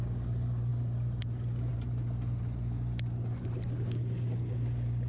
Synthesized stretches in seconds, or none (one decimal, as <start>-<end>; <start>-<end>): none